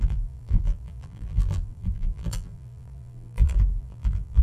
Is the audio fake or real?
fake